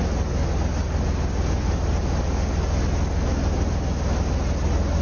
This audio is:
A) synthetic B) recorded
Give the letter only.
B